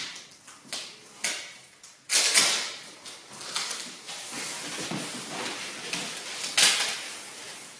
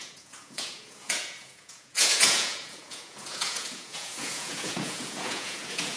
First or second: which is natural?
first